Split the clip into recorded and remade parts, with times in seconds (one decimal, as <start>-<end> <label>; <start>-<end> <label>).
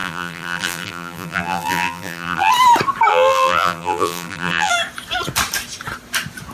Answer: 0.0-2.5 remade; 2.5-3.1 recorded; 3.1-4.7 remade; 4.7-6.5 recorded